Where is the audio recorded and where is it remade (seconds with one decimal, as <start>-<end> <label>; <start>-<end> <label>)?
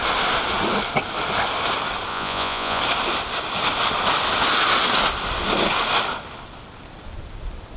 0.0-2.1 recorded; 2.1-2.8 remade; 2.8-7.8 recorded